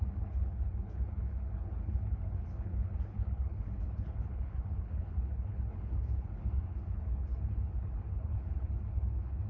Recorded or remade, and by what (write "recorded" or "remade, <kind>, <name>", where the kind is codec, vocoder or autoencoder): remade, codec, HILCodec